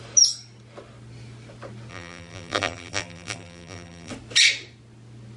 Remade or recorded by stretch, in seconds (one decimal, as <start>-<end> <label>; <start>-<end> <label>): 0.0-1.9 recorded; 1.9-4.1 remade; 4.1-5.4 recorded